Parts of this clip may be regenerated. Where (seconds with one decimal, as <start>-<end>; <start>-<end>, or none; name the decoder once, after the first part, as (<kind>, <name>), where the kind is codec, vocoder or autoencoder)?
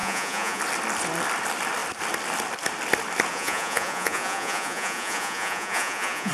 0.0-0.6 (vocoder, Vocos); 3.3-6.3